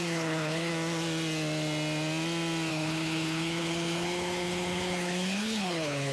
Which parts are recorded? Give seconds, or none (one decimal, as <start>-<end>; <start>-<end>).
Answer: 0.7-2.7